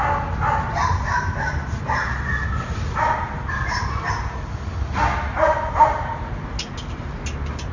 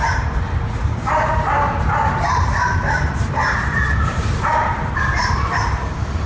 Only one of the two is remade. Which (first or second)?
second